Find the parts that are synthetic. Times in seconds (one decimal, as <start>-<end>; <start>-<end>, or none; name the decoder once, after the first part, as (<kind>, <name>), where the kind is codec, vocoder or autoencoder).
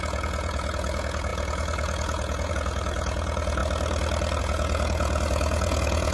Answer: 0.0-3.6 (vocoder, Vocos); 4.4-6.1